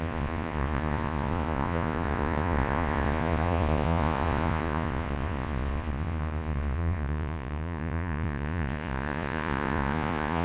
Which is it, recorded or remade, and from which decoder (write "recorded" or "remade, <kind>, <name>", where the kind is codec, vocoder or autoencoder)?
remade, vocoder, Vocos